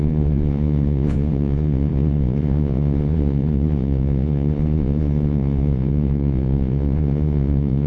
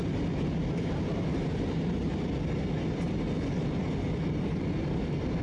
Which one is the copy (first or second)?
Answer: first